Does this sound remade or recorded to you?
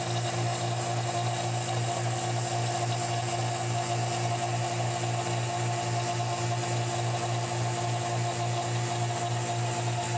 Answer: recorded